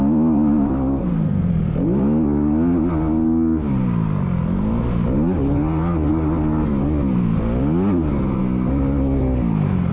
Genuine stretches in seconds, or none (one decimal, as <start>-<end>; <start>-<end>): 0.0-1.0; 1.5-9.9